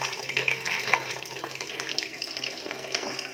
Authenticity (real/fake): fake